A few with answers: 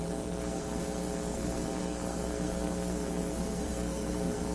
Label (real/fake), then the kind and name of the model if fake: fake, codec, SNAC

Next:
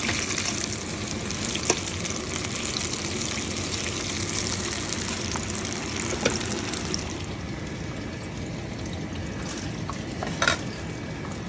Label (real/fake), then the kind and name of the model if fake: real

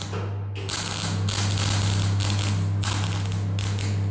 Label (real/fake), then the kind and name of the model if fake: real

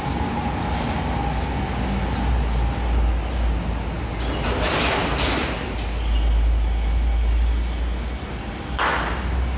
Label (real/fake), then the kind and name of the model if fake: real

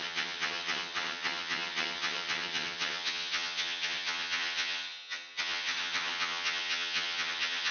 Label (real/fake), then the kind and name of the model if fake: fake, vocoder, HiFi-GAN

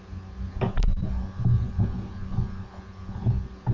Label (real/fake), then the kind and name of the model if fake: real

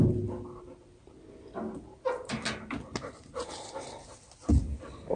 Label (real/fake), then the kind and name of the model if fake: real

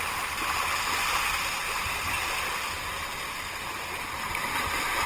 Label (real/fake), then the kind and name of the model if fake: real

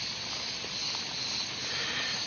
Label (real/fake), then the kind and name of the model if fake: real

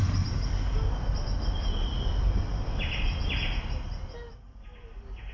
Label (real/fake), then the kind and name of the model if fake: real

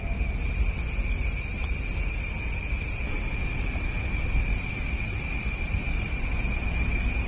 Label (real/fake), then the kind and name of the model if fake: real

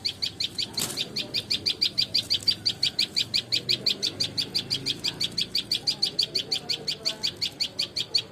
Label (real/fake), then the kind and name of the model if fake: real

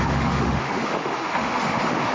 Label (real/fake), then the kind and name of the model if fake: fake, autoencoder, DAC-VAE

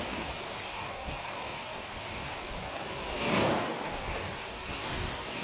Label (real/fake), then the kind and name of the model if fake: fake, codec, DAC